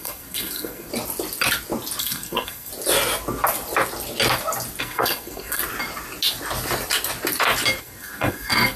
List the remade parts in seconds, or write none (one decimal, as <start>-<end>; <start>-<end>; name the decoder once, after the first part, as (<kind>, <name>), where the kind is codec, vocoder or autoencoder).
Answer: 0.0-0.9 (codec, SNAC); 2.0-2.7; 4.8-5.6; 7.8-8.8

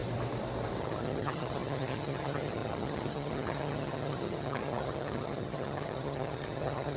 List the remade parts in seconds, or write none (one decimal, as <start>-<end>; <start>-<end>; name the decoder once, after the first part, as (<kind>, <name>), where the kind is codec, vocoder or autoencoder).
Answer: 0.8-7.0 (vocoder, HiFi-GAN)

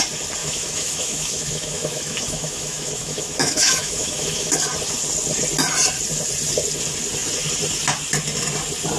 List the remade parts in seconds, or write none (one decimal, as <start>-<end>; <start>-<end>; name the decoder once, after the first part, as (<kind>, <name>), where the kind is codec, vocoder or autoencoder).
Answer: 0.4-4.5 (autoencoder, DAC-VAE)

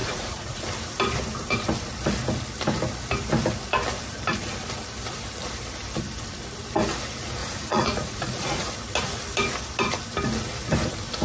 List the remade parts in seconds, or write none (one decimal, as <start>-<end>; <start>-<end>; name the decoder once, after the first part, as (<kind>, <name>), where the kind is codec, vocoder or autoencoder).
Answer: 0.0-0.6 (vocoder, Vocos); 7.4-8.7

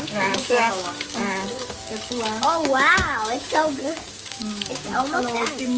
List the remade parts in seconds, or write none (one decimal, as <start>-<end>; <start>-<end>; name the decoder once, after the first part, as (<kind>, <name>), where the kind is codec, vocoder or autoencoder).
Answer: 0.0-5.8 (codec, DAC)

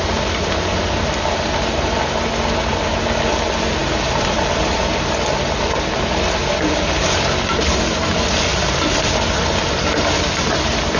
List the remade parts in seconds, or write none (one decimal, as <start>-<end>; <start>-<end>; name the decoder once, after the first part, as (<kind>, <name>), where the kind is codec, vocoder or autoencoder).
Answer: 3.8-4.9 (vocoder, BigVGAN v2); 8.5-9.5

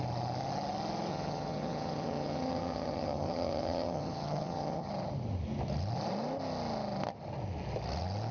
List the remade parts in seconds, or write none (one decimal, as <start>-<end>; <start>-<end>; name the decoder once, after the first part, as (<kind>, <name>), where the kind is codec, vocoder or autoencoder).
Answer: 1.1-4.9 (vocoder, HiFi-GAN)

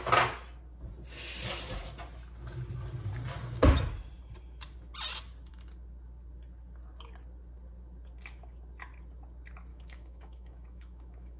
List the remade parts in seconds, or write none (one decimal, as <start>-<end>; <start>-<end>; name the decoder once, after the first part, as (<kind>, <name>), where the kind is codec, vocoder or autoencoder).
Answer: 9.7-11.4 (autoencoder, DAC-VAE)